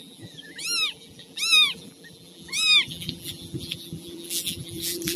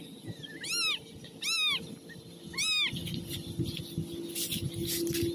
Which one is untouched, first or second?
second